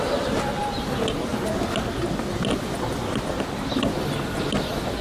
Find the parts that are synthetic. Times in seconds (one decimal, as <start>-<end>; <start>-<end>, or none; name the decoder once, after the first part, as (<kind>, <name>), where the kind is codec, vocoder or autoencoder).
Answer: none